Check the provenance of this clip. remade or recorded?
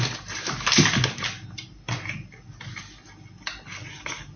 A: recorded